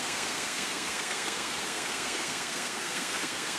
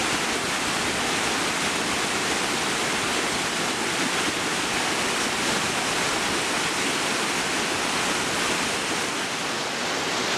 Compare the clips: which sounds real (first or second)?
second